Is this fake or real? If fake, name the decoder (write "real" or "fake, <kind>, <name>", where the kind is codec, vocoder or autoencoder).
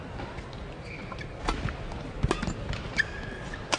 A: real